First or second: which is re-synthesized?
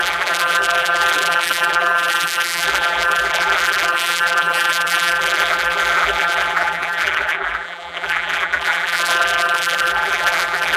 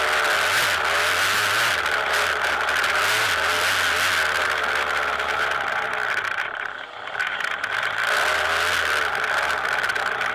first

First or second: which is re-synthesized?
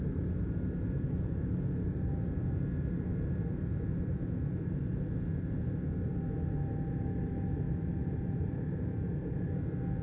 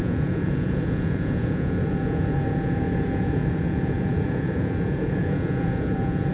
second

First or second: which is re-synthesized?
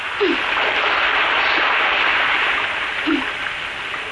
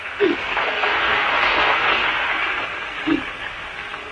second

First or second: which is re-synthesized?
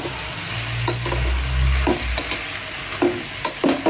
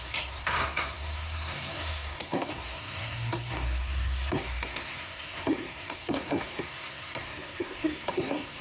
second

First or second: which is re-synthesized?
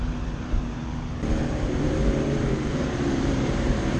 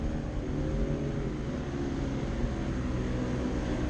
first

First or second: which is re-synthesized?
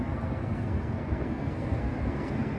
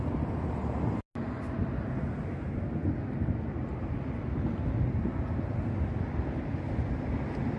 first